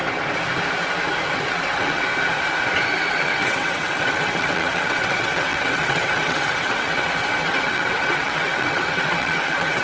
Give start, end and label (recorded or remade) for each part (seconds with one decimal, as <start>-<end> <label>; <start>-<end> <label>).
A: 0.0-1.3 recorded; 1.3-2.1 remade; 2.1-3.1 recorded; 3.1-9.8 remade